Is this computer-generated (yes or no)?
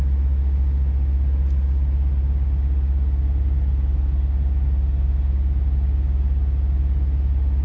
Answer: no